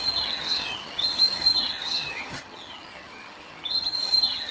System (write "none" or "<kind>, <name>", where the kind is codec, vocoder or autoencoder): vocoder, HiFi-GAN